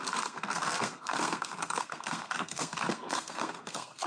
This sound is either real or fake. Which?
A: fake